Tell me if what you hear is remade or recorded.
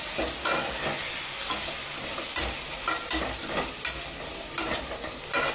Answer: recorded